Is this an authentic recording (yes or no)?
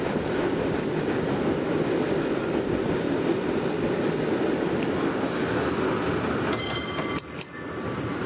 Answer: yes